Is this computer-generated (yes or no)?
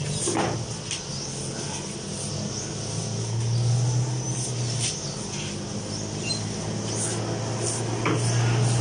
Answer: no